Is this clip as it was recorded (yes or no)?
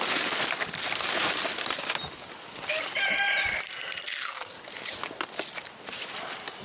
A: yes